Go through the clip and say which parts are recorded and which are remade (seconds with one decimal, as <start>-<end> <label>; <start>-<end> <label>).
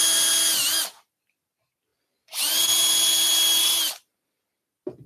0.0-1.9 recorded; 1.9-2.9 remade; 2.9-5.1 recorded